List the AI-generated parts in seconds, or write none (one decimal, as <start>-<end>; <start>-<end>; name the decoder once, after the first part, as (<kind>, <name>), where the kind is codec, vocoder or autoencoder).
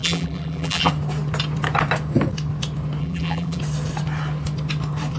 0.0-0.9 (vocoder, BigVGAN v2); 3.0-3.6